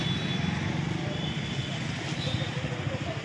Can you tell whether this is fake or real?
real